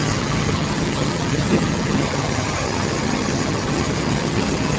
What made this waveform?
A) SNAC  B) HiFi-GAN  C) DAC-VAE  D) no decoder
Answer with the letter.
B